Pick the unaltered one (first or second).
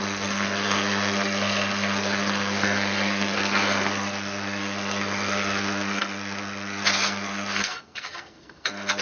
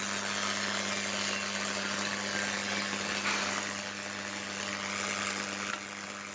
second